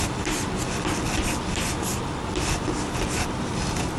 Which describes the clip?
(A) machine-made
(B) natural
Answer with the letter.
B